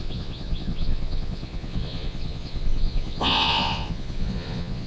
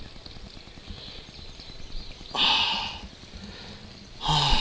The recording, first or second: second